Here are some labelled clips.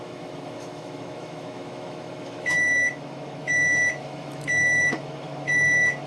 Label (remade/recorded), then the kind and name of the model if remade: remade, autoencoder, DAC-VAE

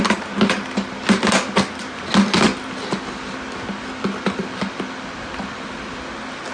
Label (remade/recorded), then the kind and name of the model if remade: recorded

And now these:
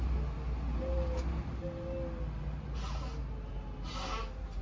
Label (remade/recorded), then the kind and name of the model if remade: recorded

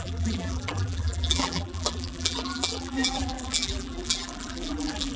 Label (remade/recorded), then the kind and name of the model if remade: remade, vocoder, BigVGAN v2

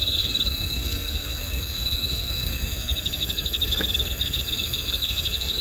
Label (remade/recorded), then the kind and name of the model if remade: remade, codec, SNAC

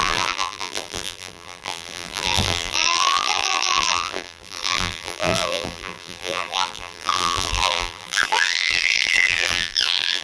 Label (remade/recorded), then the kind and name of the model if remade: remade, vocoder, BigVGAN v2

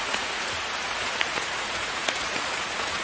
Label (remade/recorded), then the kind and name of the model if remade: remade, vocoder, Vocos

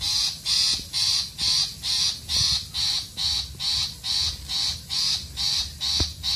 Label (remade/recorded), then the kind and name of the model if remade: recorded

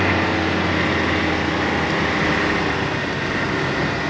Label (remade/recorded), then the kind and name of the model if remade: recorded